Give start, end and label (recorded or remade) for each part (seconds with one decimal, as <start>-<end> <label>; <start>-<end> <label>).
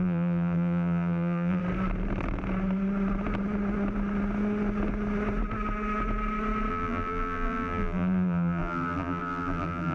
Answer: 0.0-1.6 remade; 1.6-6.7 recorded; 6.7-9.9 remade